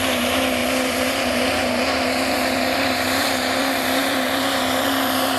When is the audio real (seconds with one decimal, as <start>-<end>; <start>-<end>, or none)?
none